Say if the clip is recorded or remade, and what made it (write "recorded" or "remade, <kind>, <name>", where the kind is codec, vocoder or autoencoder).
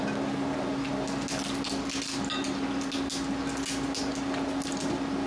recorded